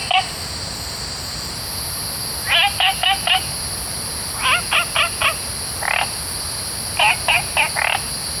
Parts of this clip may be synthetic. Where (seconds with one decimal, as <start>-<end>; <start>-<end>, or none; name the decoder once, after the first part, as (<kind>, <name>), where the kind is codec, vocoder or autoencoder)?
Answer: none